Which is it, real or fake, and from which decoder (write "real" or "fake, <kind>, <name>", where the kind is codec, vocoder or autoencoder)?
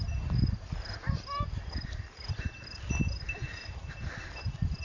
real